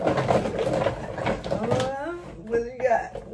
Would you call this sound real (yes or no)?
yes